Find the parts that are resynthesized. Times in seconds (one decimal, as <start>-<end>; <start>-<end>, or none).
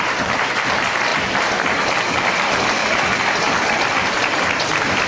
2.8-4.6